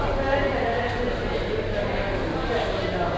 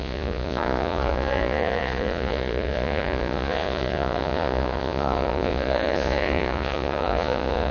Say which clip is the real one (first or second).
first